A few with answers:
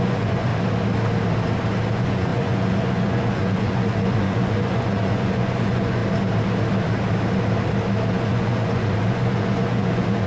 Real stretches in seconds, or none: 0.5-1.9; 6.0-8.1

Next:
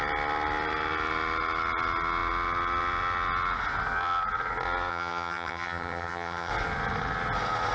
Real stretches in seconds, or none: 0.0-4.9; 6.5-7.7

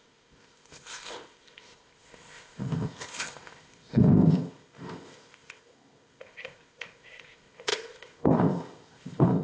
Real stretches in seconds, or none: none